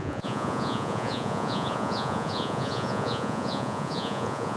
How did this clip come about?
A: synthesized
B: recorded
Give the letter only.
A